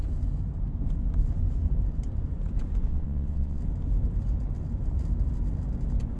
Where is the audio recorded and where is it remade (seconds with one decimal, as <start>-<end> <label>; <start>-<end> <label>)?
0.0-2.9 recorded; 2.9-3.6 remade; 3.6-6.2 recorded

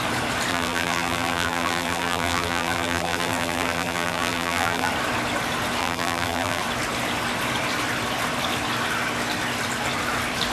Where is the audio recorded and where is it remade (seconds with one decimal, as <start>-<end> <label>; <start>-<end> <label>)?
0.0-0.5 recorded; 0.5-4.9 remade; 4.9-5.8 recorded; 5.8-6.6 remade; 6.6-10.5 recorded

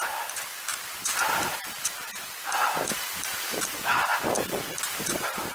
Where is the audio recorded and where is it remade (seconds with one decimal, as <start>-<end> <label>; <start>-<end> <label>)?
0.0-4.1 remade; 4.1-4.8 recorded; 4.8-5.5 remade

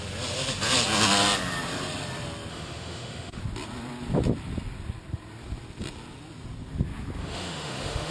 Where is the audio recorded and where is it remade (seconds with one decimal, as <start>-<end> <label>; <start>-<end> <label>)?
0.0-2.5 recorded; 2.5-3.4 remade; 3.4-7.2 recorded; 7.2-8.1 remade